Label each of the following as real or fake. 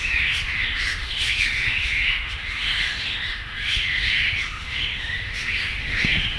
fake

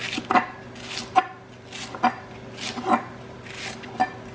real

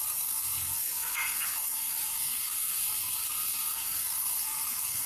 fake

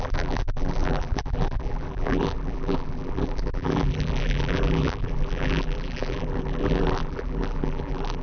fake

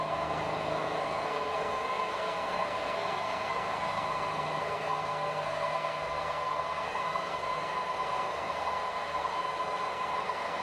fake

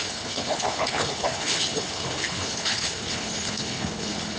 fake